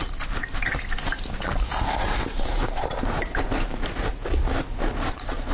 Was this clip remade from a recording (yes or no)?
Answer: no